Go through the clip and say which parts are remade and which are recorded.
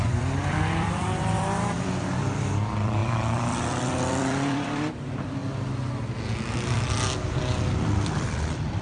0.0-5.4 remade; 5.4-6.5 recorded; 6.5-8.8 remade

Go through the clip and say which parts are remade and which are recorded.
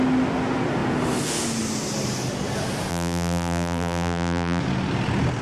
0.0-2.9 recorded; 2.9-4.6 remade; 4.6-5.4 recorded